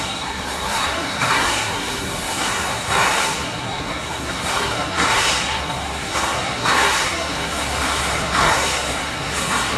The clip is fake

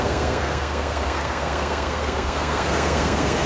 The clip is fake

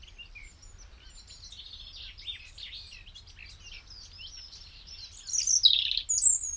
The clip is real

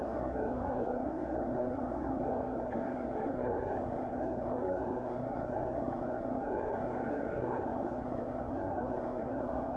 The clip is fake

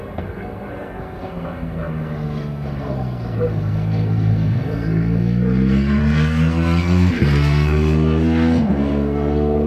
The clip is fake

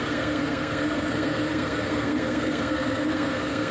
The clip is fake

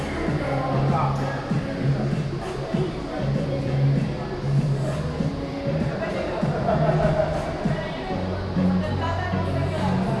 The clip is real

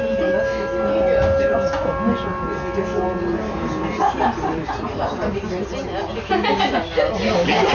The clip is real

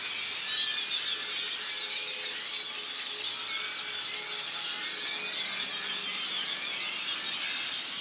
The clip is real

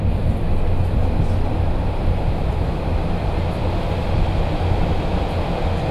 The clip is real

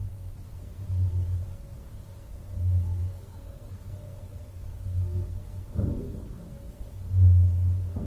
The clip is fake